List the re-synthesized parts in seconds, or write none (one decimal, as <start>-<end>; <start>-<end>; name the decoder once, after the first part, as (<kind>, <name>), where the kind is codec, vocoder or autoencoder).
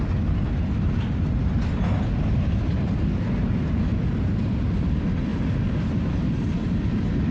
none